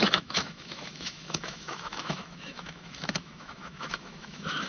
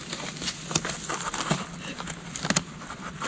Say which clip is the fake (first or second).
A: first